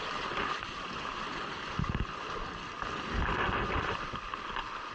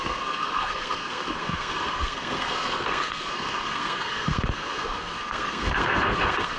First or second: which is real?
first